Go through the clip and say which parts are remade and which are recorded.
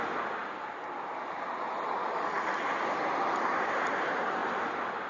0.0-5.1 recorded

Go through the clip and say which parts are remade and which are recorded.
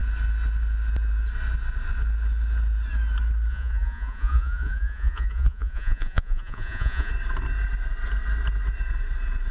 0.0-3.5 recorded; 3.5-7.1 remade; 7.1-9.5 recorded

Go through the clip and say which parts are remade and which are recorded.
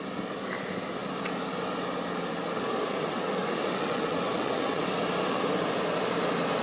0.0-2.9 recorded; 2.9-4.8 remade; 4.8-6.6 recorded